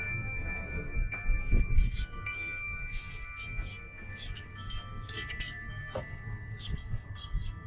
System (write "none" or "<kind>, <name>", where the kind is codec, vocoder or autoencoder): codec, SNAC